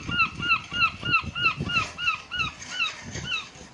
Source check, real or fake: real